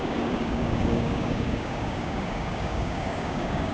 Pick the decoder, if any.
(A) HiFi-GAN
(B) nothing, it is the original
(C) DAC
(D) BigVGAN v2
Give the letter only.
C